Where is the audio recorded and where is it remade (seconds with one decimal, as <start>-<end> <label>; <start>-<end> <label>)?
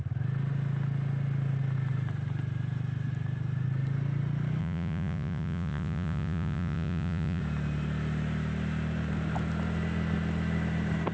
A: 0.0-4.6 recorded; 4.6-7.4 remade; 7.4-11.1 recorded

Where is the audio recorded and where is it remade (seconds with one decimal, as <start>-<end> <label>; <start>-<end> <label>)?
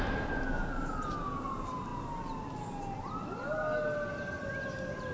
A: 0.0-5.1 recorded